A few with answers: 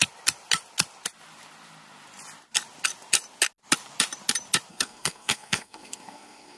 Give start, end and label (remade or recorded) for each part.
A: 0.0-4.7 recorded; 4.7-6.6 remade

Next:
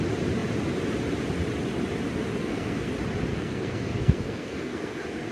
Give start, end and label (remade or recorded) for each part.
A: 0.0-2.4 recorded; 2.4-2.9 remade; 2.9-3.3 recorded; 3.3-5.3 remade

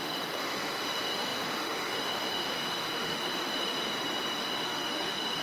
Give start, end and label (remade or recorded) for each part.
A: 0.0-3.9 remade; 3.9-4.4 recorded; 4.4-5.4 remade

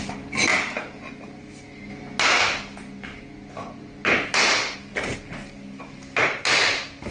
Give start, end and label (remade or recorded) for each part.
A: 0.0-7.1 recorded

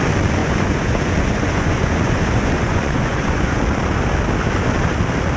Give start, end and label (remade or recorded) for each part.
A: 0.0-0.4 recorded; 0.4-3.6 remade; 3.6-5.4 recorded